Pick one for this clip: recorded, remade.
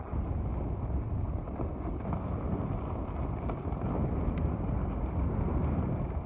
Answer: recorded